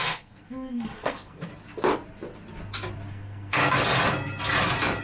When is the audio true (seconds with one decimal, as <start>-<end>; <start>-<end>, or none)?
1.5-3.1; 3.6-5.0